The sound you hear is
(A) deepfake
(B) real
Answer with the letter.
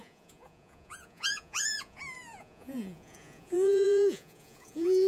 A